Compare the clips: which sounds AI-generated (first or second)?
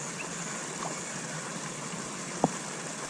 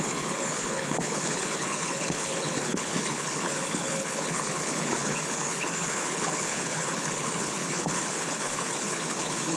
second